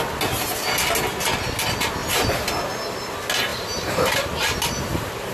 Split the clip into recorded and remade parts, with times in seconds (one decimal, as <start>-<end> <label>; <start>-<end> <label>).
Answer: 0.0-2.0 recorded; 2.0-2.6 remade; 2.6-3.5 recorded; 3.5-5.3 remade